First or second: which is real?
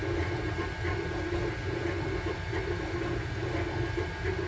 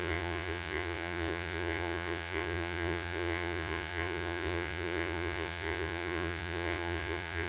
first